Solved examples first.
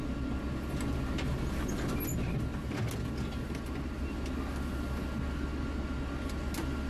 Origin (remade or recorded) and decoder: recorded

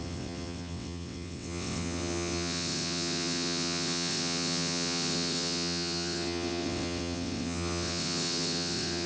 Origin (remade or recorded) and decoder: remade, vocoder, WaveNeXt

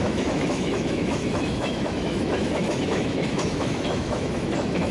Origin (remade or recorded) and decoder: remade, autoencoder, DAC-VAE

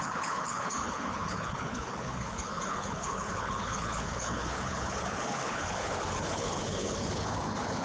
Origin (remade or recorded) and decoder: remade, codec, HILCodec